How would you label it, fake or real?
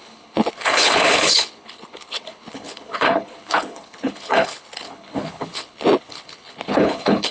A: fake